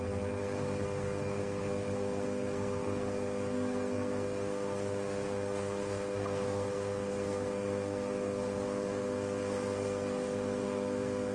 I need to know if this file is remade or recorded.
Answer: remade